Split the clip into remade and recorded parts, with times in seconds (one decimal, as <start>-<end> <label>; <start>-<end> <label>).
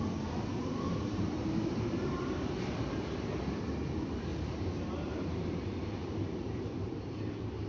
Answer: 0.0-0.5 recorded; 0.5-3.4 remade; 3.4-4.3 recorded; 4.3-6.9 remade; 6.9-7.7 recorded